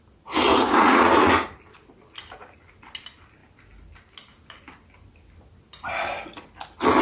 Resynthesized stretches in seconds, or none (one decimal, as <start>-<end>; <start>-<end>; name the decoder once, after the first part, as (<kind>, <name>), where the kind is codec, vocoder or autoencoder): 0.5-1.3 (vocoder, Vocos)